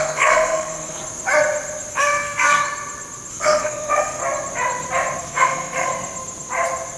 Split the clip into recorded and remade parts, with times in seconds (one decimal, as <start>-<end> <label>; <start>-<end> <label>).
0.0-1.0 remade; 1.0-1.9 recorded; 1.9-2.6 remade; 2.6-3.3 recorded; 3.3-4.2 remade; 4.2-5.2 recorded; 5.2-5.9 remade; 5.9-7.0 recorded